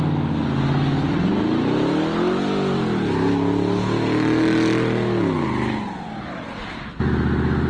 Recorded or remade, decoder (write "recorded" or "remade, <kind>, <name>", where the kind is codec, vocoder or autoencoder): recorded